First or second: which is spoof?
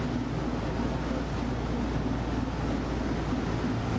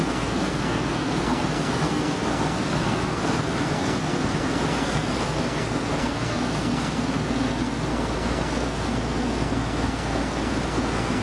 second